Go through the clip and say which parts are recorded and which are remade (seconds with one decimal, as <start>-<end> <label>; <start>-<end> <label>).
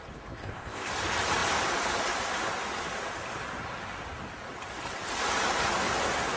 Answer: 0.0-0.4 recorded; 0.4-0.9 remade; 0.9-6.4 recorded